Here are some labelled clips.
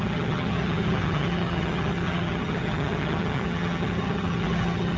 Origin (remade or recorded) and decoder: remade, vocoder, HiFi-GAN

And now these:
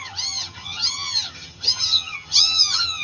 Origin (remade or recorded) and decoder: remade, vocoder, HiFi-GAN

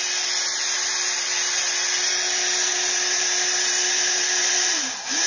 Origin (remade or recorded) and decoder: recorded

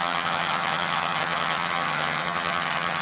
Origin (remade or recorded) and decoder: remade, vocoder, HiFi-GAN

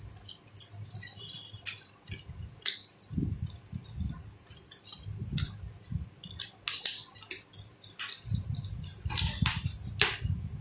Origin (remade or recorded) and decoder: recorded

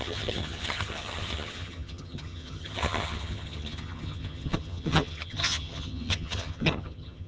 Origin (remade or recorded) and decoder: remade, vocoder, HiFi-GAN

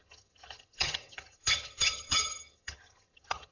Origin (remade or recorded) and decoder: remade, vocoder, HiFi-GAN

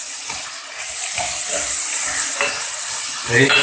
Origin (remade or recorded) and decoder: recorded